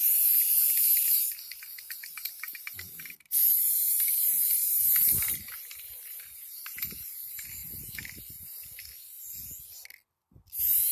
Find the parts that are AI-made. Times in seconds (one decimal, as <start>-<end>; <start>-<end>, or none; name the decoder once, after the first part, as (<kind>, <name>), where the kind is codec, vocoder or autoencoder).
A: none